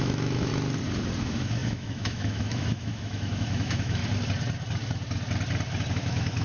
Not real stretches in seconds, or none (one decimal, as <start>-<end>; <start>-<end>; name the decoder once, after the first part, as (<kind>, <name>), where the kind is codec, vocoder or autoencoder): 0.0-0.5 (autoencoder, DAC-VAE); 1.2-4.0; 5.9-6.4

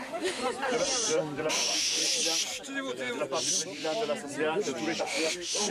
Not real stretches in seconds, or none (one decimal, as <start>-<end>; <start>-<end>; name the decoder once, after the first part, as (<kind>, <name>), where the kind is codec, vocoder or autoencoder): 0.0-0.4 (autoencoder, DAC-VAE); 1.5-2.0; 5.0-5.7

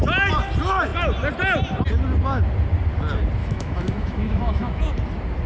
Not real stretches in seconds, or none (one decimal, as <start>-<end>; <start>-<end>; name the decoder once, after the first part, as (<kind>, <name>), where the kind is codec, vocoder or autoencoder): 3.4-4.8 (autoencoder, DAC-VAE)